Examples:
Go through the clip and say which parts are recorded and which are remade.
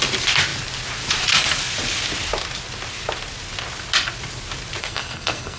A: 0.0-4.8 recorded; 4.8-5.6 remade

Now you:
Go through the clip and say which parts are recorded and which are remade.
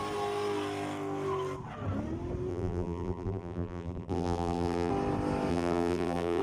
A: 0.0-2.5 recorded; 2.5-4.9 remade; 4.9-5.5 recorded; 5.5-6.4 remade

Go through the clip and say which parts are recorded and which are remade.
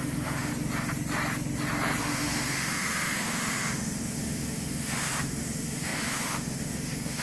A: 0.0-0.5 remade; 0.5-2.0 recorded; 2.0-7.2 remade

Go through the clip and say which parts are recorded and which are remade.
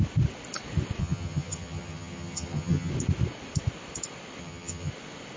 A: 0.0-1.0 recorded; 1.0-2.9 remade; 2.9-4.4 recorded; 4.4-4.9 remade; 4.9-5.4 recorded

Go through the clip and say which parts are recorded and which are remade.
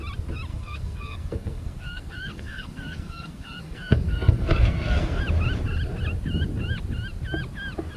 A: 0.0-0.5 recorded; 0.5-5.2 remade; 5.2-8.0 recorded